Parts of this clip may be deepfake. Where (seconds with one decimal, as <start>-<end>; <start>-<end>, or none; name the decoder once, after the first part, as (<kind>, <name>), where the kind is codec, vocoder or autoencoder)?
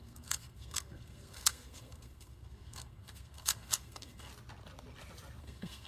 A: 0.0-4.3 (codec, SNAC); 5.4-5.9